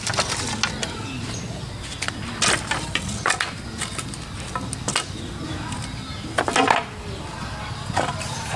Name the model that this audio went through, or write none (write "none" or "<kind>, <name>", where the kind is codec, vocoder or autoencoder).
none